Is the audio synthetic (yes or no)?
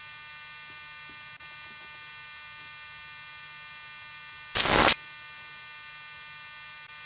no